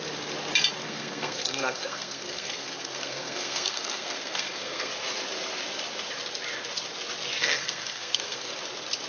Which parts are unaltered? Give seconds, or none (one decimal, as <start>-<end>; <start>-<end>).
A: 0.0-0.8; 4.9-7.4; 8.5-9.1